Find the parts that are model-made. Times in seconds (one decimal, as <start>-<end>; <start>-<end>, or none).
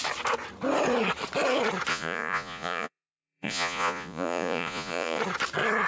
1.9-5.2